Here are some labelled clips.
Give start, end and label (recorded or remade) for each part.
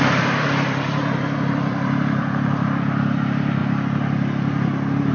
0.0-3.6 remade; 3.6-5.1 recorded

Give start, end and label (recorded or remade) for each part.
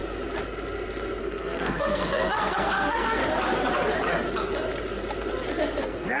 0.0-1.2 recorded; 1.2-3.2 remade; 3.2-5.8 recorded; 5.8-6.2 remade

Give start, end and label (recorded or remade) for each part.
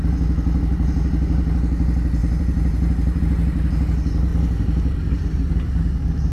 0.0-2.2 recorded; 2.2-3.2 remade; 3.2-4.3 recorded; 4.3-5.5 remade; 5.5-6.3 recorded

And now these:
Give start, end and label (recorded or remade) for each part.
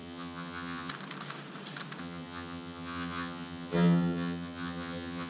0.0-0.9 remade; 0.9-2.0 recorded; 2.0-5.3 remade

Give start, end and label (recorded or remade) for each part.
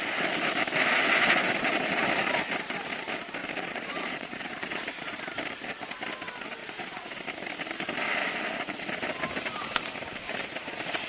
0.0-3.4 recorded; 3.4-5.2 remade; 5.2-6.6 recorded; 6.6-7.2 remade; 7.2-8.2 recorded; 8.2-9.0 remade; 9.0-11.1 recorded